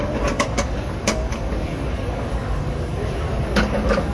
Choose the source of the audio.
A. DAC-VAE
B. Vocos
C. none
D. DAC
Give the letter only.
D